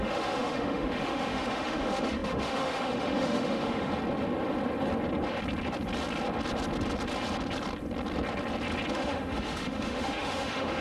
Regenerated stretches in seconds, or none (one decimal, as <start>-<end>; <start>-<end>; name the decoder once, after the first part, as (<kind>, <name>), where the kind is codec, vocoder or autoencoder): 0.0-3.9 (autoencoder, DAC-VAE); 8.9-10.8